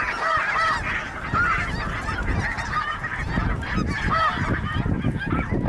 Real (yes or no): yes